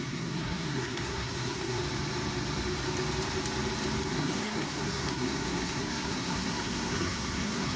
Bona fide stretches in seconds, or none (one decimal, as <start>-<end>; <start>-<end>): 1.8-4.1